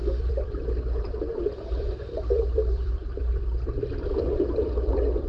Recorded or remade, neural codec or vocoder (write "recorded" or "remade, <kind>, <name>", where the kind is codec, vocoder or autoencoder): remade, vocoder, BigVGAN v2